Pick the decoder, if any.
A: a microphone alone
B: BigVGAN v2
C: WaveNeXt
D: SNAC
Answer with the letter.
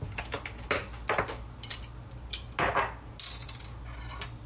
A